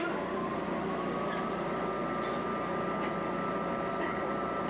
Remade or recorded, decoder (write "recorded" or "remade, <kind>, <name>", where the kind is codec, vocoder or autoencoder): recorded